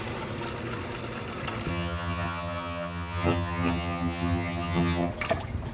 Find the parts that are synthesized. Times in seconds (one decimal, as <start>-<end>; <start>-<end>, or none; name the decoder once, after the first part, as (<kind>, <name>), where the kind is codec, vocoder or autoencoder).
1.7-5.1 (vocoder, HiFi-GAN)